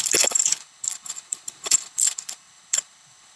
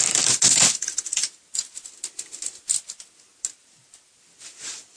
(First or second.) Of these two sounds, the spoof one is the first